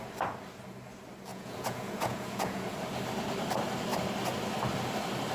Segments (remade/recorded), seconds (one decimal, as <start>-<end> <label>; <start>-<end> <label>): 0.0-1.3 recorded; 1.3-2.7 remade; 2.7-5.3 recorded